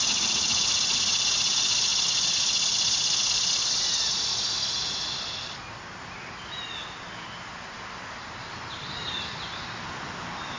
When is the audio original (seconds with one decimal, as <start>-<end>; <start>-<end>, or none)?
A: 1.9-3.3; 4.3-7.5